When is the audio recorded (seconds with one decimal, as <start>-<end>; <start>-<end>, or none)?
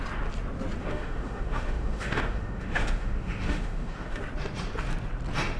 0.0-0.8; 4.2-5.6